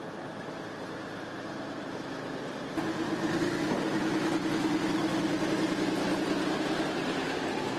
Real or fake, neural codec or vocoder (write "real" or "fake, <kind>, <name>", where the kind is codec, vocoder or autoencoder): real